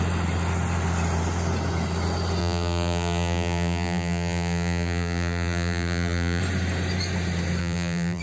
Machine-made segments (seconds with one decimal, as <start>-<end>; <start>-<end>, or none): 2.4-6.4; 7.6-8.2